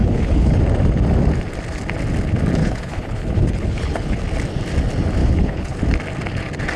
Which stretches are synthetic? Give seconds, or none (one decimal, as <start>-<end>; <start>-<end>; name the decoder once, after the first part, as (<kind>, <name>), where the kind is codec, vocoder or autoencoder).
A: 0.0-0.6 (codec, HILCodec); 2.6-4.2; 5.2-5.8